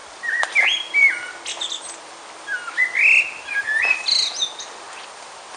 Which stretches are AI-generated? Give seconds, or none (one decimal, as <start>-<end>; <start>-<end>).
none